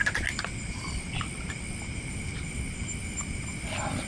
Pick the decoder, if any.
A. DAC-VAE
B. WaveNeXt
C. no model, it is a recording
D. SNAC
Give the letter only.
C